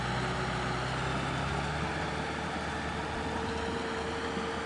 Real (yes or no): yes